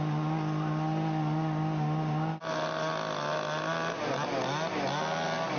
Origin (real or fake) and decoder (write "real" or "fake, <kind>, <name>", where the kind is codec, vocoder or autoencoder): real